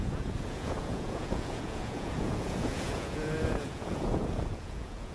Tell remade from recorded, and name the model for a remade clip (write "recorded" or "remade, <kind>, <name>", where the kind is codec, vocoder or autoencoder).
remade, vocoder, Vocos